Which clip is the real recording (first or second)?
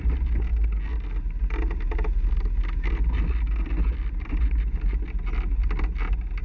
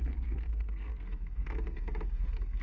first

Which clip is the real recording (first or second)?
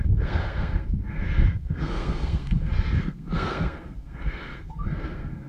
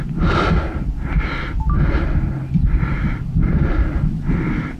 second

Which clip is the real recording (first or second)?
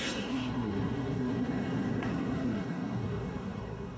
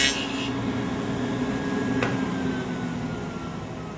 second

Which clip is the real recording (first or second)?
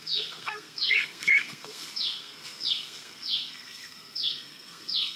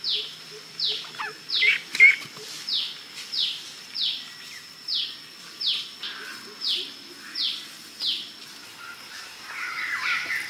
second